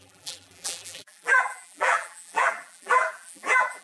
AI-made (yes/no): yes